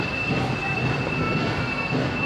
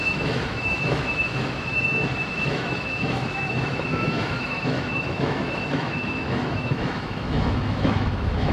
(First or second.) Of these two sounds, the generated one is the second